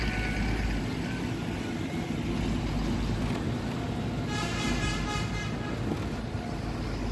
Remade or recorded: recorded